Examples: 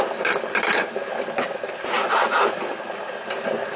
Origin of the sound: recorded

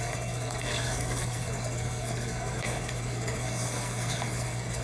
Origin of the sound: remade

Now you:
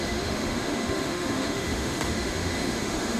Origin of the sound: remade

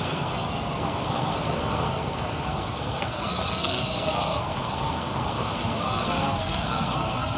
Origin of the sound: remade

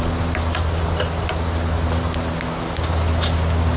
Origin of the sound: recorded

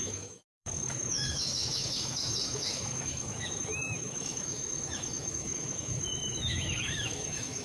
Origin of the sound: remade